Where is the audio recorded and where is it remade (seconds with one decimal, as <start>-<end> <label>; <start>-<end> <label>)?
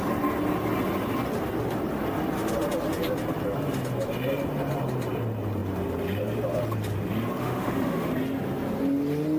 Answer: 0.0-7.4 recorded; 7.4-8.1 remade; 8.1-9.4 recorded